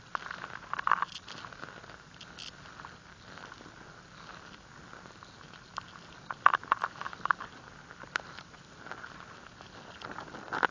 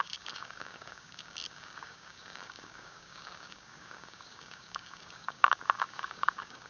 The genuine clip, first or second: first